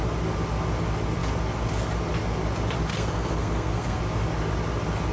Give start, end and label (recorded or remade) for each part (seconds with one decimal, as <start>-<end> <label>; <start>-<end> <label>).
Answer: 0.0-2.9 recorded; 2.9-4.0 remade; 4.0-5.1 recorded